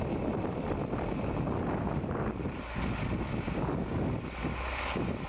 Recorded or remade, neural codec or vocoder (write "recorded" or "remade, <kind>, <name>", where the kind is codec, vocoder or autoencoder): recorded